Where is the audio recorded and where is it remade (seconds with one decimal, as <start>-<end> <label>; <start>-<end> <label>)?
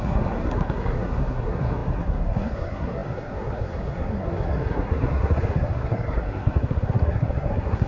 0.0-7.9 remade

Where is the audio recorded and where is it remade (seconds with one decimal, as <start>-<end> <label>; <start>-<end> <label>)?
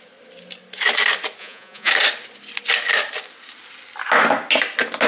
0.0-1.4 recorded; 1.4-1.9 remade; 1.9-5.1 recorded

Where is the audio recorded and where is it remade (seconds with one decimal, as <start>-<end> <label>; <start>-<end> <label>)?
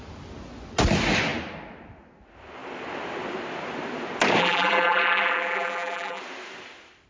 0.0-4.4 recorded; 4.4-6.2 remade; 6.2-7.1 recorded